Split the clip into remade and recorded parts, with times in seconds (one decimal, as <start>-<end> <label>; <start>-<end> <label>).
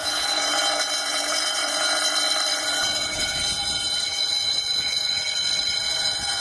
0.0-2.0 remade; 2.0-2.5 recorded; 2.5-5.2 remade; 5.2-5.8 recorded; 5.8-6.4 remade